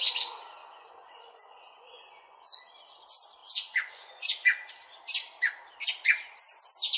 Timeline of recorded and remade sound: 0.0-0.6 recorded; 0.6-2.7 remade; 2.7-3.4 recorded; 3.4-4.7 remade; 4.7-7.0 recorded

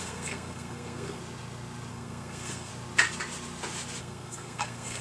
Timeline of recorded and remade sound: 0.0-1.2 remade; 1.2-1.9 recorded; 1.9-2.7 remade; 2.7-4.0 recorded; 4.0-5.0 remade